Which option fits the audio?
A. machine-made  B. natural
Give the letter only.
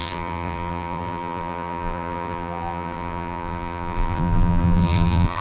A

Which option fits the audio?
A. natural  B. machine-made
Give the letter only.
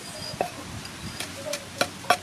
A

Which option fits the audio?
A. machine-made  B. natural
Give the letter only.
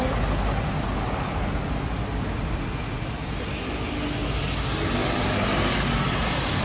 B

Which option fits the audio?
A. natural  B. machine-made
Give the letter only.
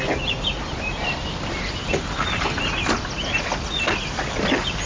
A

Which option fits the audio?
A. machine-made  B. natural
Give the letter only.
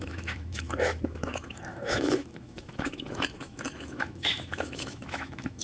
A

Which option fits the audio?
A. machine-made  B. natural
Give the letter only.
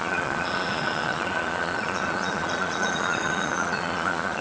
A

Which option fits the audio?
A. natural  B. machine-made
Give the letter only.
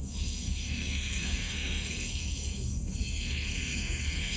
B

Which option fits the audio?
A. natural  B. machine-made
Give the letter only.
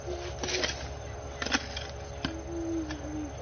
A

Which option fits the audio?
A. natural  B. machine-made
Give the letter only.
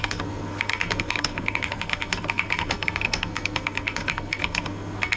B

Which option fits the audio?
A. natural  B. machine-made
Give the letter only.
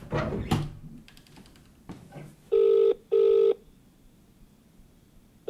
A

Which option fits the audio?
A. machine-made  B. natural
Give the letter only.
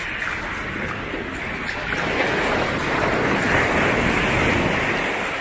B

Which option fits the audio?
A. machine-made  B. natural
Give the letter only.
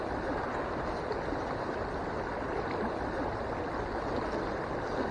B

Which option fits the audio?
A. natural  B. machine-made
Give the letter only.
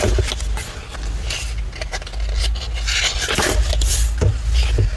A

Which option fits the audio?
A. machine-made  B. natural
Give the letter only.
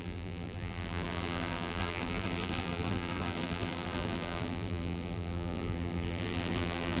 A